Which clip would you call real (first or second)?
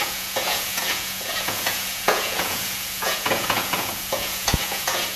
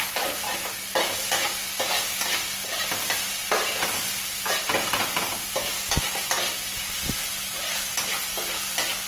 second